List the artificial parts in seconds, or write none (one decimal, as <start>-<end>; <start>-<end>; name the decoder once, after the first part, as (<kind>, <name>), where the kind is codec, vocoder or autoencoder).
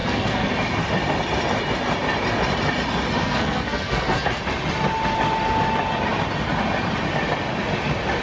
0.0-0.5 (codec, SNAC); 3.2-4.4